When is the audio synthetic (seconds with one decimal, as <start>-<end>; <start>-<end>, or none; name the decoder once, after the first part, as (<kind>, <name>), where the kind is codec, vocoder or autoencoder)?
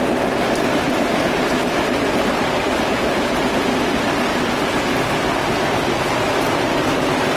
4.3-5.9 (vocoder, BigVGAN v2)